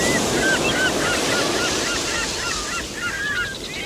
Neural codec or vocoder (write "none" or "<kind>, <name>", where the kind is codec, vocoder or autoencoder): none